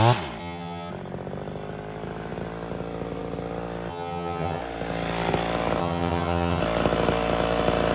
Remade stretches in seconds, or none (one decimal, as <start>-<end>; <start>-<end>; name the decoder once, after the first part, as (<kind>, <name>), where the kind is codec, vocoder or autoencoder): 0.4-0.9 (vocoder, HiFi-GAN); 3.9-4.6; 5.8-6.6